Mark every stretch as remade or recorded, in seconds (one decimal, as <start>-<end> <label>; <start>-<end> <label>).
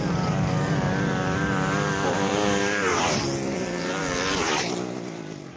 0.0-5.6 recorded